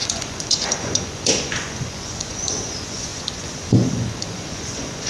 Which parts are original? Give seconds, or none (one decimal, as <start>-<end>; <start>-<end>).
none